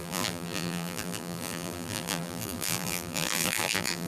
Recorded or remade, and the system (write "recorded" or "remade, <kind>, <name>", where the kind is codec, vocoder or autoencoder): remade, vocoder, BigVGAN v2